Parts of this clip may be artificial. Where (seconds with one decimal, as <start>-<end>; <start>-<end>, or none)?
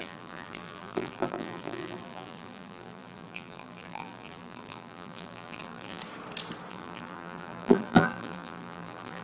0.0-6.0; 6.7-9.2